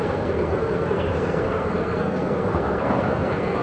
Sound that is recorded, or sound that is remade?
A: remade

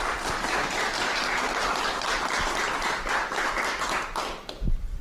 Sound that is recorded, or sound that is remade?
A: recorded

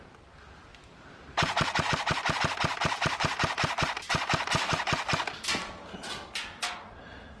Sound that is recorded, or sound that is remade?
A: recorded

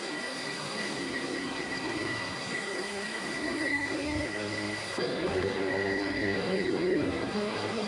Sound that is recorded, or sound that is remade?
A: remade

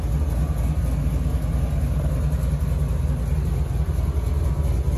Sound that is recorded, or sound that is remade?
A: recorded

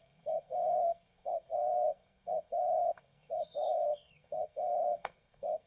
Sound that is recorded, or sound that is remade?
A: remade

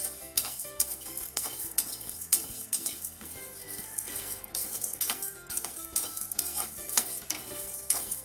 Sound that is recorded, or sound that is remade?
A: remade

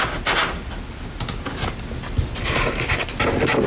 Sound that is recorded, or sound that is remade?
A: recorded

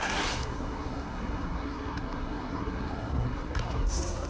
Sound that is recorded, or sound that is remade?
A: remade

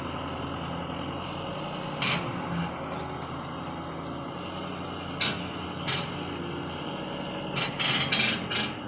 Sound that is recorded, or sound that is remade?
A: recorded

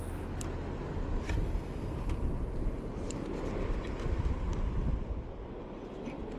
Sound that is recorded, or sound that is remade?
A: recorded